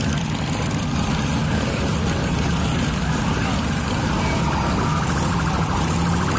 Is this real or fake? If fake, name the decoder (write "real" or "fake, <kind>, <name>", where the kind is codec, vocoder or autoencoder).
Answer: real